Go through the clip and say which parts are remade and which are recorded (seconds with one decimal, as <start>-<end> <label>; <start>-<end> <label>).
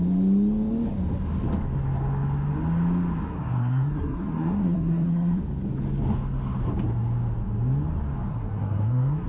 0.0-3.3 recorded; 3.3-5.4 remade; 5.4-8.3 recorded; 8.3-9.3 remade